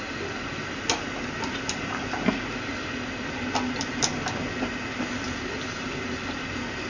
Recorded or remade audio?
recorded